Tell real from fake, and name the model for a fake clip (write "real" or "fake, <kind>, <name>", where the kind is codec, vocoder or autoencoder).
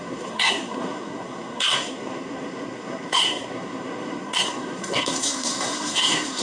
fake, codec, SNAC